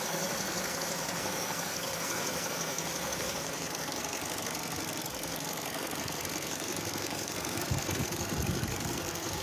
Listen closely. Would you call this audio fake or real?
fake